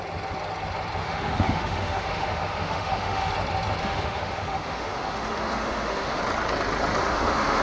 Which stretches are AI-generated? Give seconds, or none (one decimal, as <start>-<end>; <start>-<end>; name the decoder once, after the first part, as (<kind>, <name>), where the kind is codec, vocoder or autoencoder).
1.0-3.3 (autoencoder, DAC-VAE); 3.8-6.2; 7.0-7.6